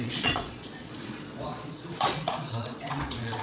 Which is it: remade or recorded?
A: remade